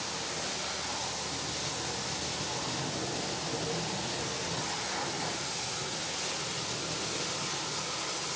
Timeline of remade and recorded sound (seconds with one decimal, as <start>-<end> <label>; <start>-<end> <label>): 0.0-8.4 recorded